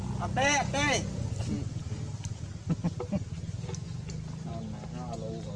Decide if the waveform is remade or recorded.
recorded